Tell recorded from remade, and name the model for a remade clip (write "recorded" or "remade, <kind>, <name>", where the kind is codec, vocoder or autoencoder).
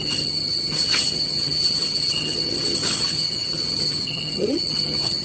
remade, vocoder, HiFi-GAN